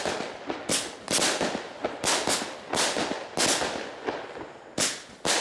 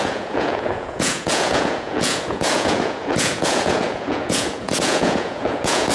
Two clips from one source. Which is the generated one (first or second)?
second